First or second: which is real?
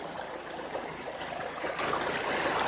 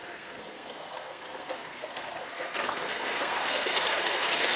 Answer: first